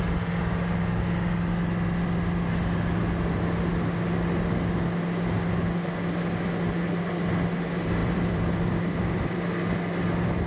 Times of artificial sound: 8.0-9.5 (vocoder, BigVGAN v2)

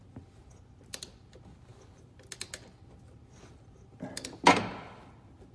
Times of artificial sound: none

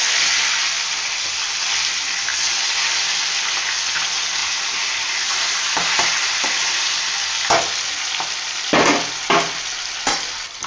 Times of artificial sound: 4.4-7.1 (vocoder, BigVGAN v2)

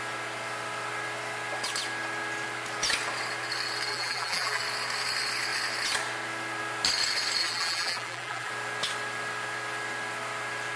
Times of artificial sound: 3.9-4.6 (vocoder, BigVGAN v2); 7.4-8.5

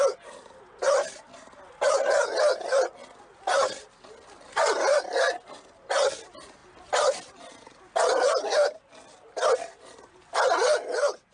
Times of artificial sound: none

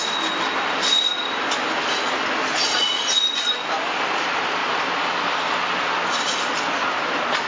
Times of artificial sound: none

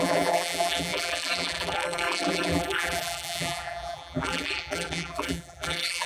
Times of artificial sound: 0.0-6.1 (vocoder, BigVGAN v2)